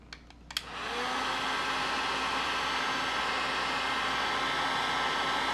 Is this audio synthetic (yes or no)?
no